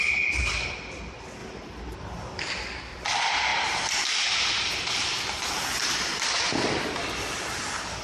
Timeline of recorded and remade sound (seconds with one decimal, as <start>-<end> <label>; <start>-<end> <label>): 0.0-8.0 recorded

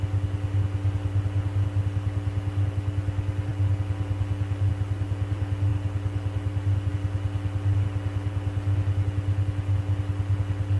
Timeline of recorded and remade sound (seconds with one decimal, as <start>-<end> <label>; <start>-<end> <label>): 0.0-10.8 recorded

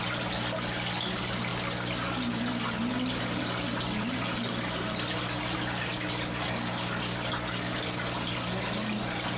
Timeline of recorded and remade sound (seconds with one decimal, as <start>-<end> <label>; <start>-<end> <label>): 0.0-9.4 recorded